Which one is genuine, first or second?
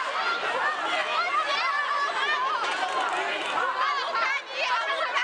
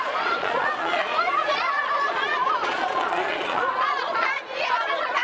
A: first